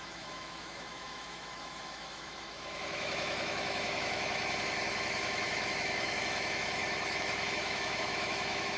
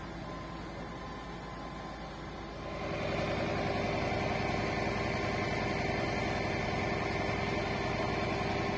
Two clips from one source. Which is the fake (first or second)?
first